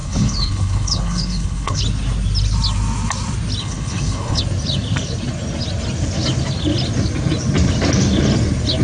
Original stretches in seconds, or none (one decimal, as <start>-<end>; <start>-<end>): 1.8-3.6; 4.4-8.8